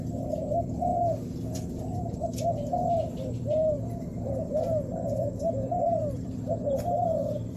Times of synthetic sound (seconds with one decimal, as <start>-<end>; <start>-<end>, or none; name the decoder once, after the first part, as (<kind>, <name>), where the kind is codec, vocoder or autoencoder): 0.0-0.9 (vocoder, BigVGAN v2); 1.5-7.6